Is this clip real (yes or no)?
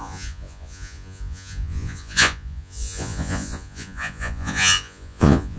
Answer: no